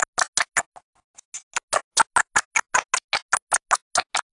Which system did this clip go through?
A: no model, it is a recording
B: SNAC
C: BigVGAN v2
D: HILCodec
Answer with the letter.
A